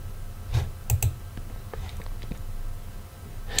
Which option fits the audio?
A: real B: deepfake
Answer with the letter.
A